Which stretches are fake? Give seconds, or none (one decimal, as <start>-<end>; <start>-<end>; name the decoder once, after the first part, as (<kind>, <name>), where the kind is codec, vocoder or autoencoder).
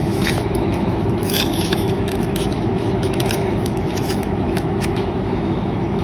0.0-6.0 (autoencoder, DAC-VAE)